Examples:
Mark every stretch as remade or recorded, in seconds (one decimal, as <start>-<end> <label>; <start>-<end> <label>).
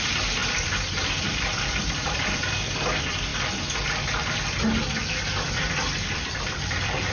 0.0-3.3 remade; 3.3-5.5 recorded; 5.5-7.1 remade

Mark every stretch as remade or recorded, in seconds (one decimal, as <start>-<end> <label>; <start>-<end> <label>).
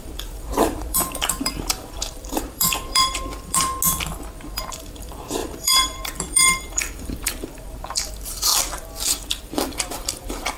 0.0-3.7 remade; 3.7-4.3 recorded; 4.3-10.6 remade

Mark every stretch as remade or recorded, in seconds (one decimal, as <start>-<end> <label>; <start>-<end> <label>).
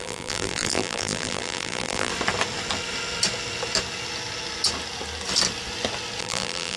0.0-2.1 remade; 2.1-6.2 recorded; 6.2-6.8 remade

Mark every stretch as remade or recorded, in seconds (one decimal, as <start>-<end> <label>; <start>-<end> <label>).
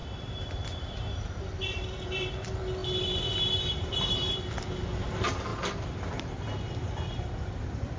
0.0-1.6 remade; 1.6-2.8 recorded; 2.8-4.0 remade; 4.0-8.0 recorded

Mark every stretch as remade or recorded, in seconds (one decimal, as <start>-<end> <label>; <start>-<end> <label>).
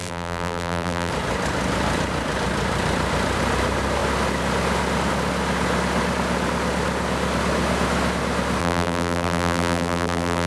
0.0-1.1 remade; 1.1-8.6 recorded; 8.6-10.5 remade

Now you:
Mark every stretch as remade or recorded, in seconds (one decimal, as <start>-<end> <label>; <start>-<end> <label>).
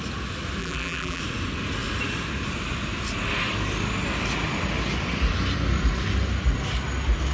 0.0-0.6 recorded; 0.6-1.2 remade; 1.2-7.3 recorded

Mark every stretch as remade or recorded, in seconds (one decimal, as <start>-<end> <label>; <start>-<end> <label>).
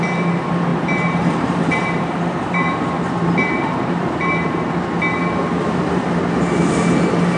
0.0-0.7 recorded; 0.7-4.7 remade; 4.7-7.4 recorded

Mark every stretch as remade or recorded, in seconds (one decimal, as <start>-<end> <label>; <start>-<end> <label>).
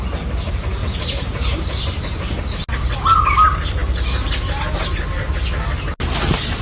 0.0-0.8 recorded; 0.8-2.4 remade; 2.4-6.6 recorded